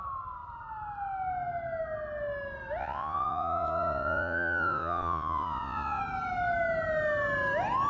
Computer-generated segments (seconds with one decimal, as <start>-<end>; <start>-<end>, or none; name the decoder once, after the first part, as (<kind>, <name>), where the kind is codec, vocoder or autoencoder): 2.8-6.0 (vocoder, Vocos)